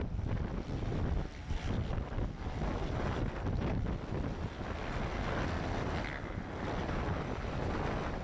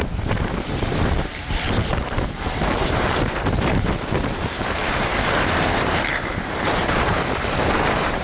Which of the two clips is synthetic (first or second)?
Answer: second